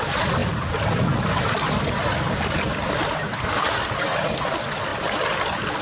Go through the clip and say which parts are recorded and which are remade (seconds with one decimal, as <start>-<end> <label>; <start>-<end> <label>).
0.0-5.8 recorded